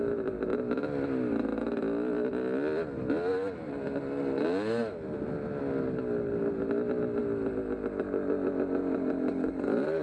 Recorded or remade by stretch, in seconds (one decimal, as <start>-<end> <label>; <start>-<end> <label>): 0.0-10.0 recorded